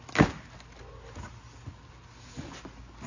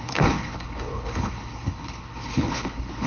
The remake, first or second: second